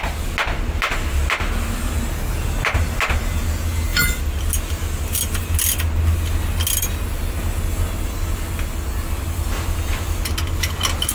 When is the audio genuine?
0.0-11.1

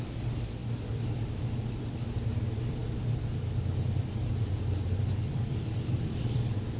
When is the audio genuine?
0.6-1.8; 2.8-4.0

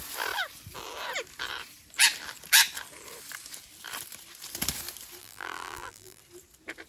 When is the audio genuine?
0.0-5.2; 6.2-6.9

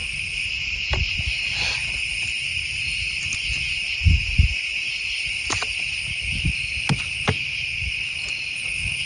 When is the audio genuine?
0.0-9.1

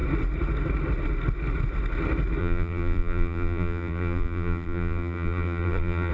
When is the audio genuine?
0.0-2.4